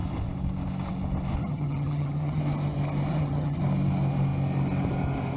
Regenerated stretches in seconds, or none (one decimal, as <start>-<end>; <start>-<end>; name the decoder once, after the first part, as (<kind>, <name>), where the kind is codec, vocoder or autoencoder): 1.4-2.4 (vocoder, HiFi-GAN); 3.1-3.6